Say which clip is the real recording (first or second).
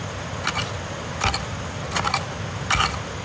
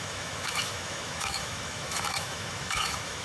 first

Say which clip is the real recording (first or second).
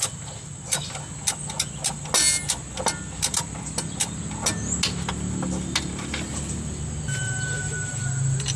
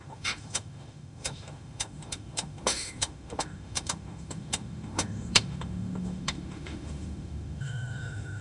first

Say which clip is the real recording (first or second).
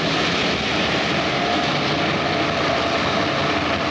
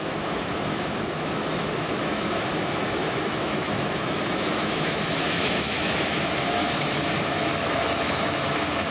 first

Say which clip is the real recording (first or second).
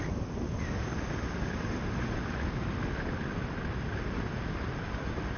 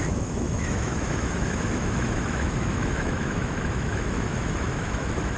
first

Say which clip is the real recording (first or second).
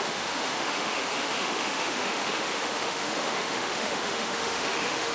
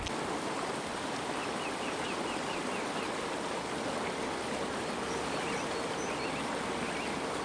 second